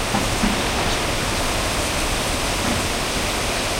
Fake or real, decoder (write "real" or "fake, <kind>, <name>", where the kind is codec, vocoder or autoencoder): real